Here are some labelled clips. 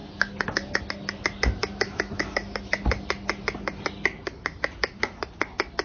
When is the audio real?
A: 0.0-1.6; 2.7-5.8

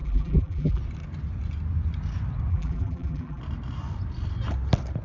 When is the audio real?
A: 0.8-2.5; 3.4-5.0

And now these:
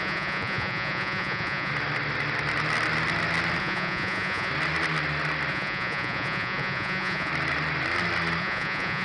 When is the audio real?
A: 1.7-3.6; 4.5-5.5; 7.3-8.4

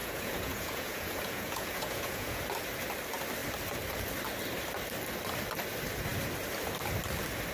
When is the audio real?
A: 2.4-7.5